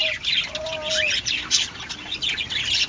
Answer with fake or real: real